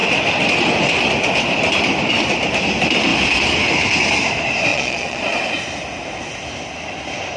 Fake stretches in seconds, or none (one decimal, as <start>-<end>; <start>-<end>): 4.7-5.2